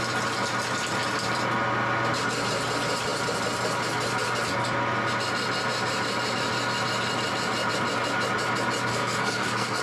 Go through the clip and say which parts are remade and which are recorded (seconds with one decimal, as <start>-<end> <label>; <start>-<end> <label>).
0.0-8.9 recorded; 8.9-9.8 remade